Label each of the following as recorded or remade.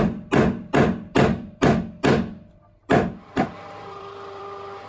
remade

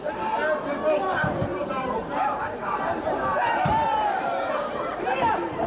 remade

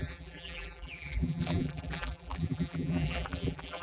remade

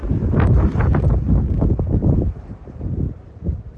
recorded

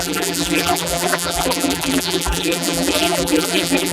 remade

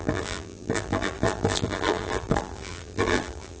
remade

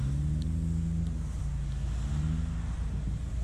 recorded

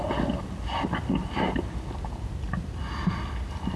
recorded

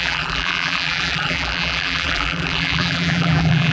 remade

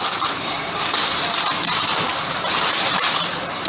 remade